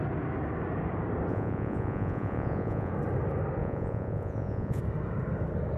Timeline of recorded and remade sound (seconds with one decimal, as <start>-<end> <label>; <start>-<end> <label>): 0.0-1.3 recorded; 1.3-2.9 remade; 2.9-3.6 recorded; 3.6-4.8 remade; 4.8-5.8 recorded